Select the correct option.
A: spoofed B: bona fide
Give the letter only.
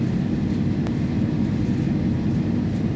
B